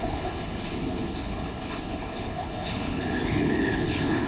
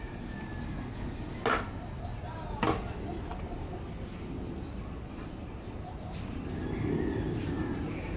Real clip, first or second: second